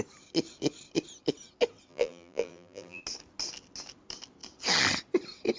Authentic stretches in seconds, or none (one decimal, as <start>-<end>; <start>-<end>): 0.0-1.9; 3.0-5.6